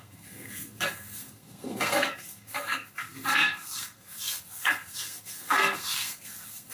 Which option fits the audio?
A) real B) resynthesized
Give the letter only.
B